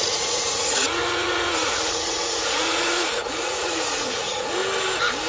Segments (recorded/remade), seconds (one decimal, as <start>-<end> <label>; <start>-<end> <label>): 0.0-4.6 remade; 4.6-5.3 recorded